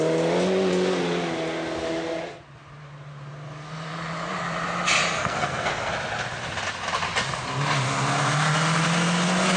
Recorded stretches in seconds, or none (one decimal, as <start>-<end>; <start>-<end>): 0.0-5.2; 5.9-9.6